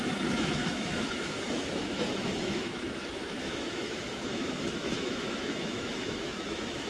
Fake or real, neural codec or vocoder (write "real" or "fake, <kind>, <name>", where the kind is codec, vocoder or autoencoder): fake, autoencoder, DAC-VAE